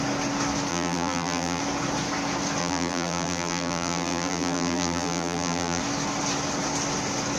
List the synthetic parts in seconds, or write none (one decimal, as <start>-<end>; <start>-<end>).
0.7-1.6; 2.6-5.8